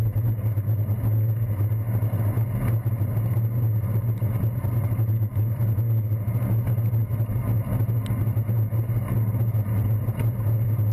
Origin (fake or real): real